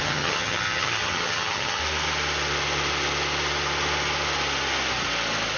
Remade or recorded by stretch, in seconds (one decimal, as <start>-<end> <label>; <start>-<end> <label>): 0.0-1.8 remade; 1.8-5.6 recorded